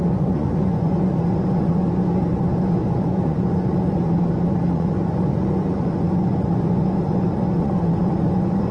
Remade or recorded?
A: remade